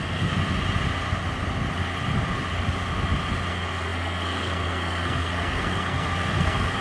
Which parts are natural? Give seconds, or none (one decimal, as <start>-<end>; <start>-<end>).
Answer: 0.4-3.5